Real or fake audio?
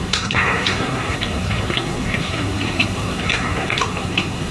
fake